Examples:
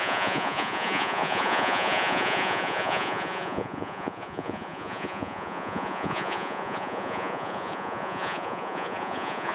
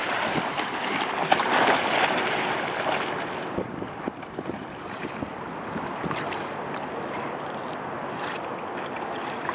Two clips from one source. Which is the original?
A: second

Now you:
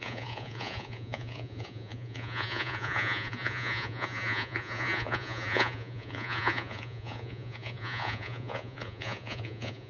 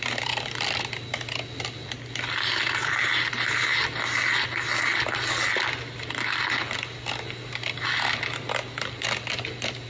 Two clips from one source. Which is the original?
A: second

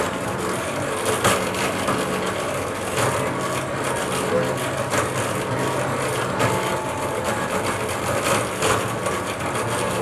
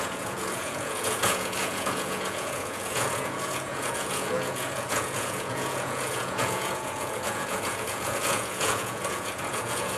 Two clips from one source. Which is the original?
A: first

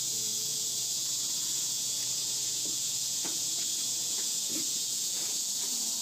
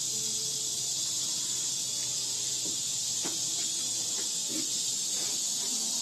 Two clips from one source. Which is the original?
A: second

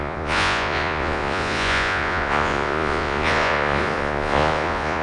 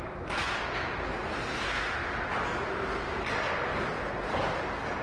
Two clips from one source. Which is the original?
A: second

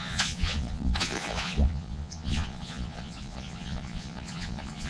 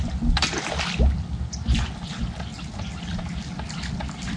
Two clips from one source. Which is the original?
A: second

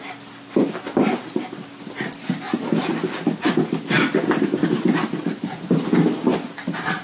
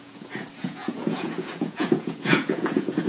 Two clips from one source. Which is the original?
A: first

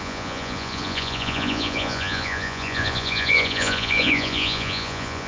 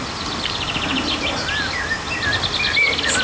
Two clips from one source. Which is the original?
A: second